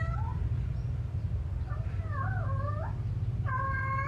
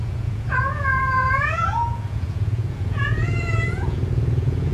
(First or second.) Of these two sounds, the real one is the first